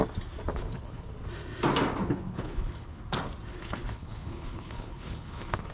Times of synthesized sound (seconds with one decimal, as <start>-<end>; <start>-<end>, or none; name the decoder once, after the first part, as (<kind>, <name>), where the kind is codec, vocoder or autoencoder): 0.5-1.1 (codec, HILCodec); 2.0-3.0; 3.5-5.7